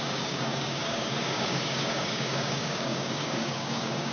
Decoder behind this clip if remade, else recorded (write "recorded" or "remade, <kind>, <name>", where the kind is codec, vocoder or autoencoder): remade, codec, DAC